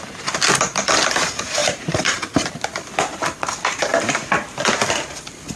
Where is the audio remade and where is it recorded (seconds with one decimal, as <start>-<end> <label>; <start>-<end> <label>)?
0.0-1.6 recorded; 1.6-2.5 remade; 2.5-5.6 recorded